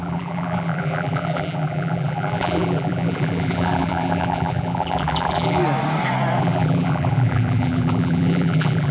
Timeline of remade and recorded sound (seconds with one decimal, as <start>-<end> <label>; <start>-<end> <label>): 0.0-5.6 remade; 5.6-6.4 recorded; 6.4-8.9 remade